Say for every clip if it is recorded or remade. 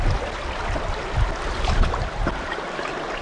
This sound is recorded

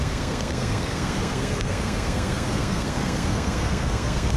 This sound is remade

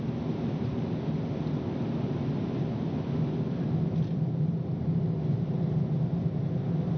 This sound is recorded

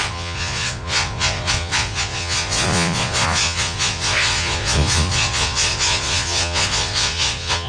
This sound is remade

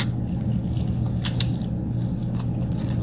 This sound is recorded